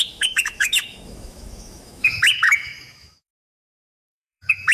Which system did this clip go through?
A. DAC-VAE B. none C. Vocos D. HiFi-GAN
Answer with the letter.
A